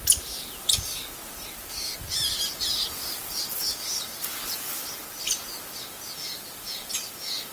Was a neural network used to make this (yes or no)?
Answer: no